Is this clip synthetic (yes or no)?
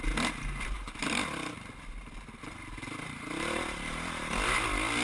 no